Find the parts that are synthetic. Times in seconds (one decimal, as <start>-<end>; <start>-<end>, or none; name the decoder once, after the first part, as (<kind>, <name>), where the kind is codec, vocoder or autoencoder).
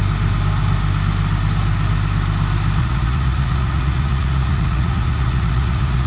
2.8-6.1 (vocoder, Vocos)